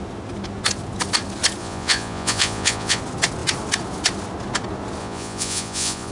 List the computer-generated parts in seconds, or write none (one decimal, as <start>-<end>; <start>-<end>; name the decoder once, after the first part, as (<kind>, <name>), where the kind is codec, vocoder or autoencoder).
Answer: 1.6-3.0 (vocoder, Vocos); 5.0-6.1